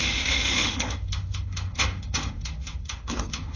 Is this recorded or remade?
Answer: remade